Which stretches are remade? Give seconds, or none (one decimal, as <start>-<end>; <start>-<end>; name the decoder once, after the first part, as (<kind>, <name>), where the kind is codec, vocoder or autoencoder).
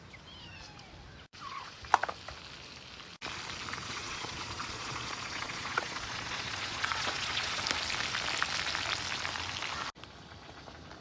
1.3-1.8 (vocoder, Vocos); 3.8-7.6